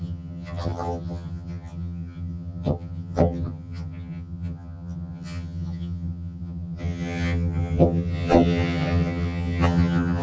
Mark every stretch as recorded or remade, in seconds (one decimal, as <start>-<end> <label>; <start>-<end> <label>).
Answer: 0.0-10.2 remade